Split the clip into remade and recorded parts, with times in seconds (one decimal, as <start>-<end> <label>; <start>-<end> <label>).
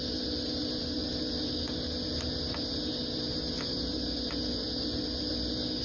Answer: 0.0-5.8 recorded